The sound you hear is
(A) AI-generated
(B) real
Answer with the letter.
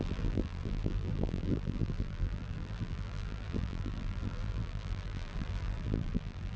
A